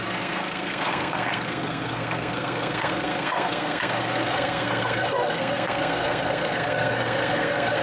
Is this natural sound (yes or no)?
no